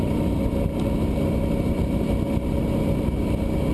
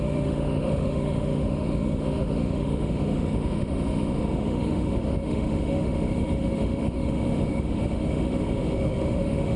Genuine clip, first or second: first